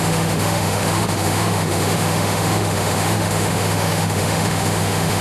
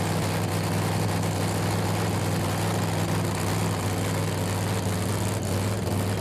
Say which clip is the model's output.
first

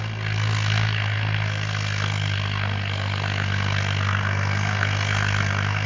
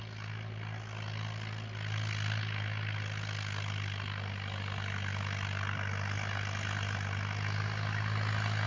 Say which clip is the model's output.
first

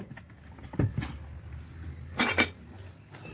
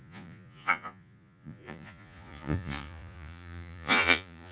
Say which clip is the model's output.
second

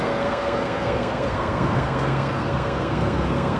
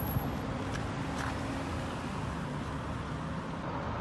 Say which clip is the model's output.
first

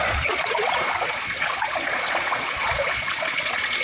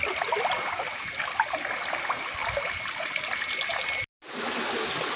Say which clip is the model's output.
first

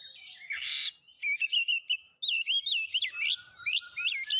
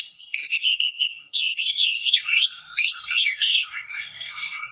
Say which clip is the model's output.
second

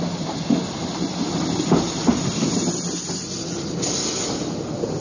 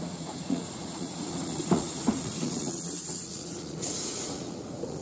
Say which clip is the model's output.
second